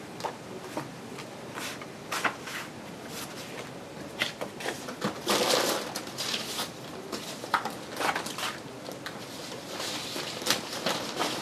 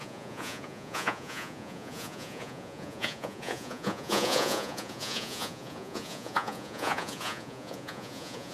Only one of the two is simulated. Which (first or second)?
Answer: second